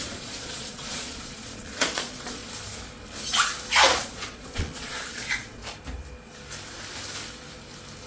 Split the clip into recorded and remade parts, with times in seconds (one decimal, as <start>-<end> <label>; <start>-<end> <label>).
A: 0.0-2.4 remade; 2.4-4.0 recorded; 4.0-5.6 remade; 5.6-8.1 recorded